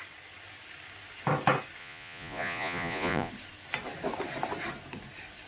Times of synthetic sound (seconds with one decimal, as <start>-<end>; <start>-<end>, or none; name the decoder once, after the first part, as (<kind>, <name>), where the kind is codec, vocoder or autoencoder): 1.8-3.3 (vocoder, Vocos)